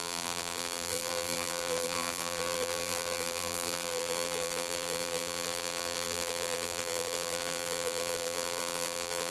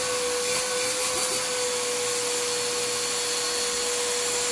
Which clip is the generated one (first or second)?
first